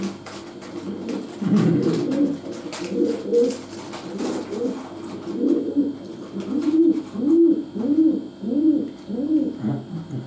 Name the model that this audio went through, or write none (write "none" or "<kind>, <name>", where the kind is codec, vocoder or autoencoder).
none